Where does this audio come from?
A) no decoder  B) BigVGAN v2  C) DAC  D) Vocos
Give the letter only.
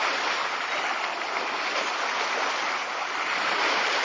A